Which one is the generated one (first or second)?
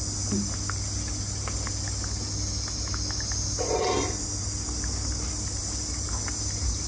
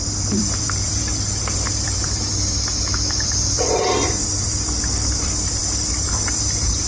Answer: second